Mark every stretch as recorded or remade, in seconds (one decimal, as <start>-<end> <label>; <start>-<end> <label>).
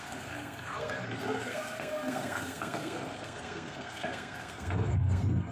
0.0-5.5 remade